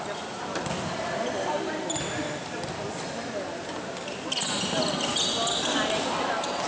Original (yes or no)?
yes